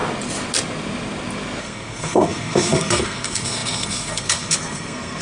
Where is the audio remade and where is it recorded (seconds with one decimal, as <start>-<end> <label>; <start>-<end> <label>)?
0.0-1.6 recorded; 1.6-5.2 remade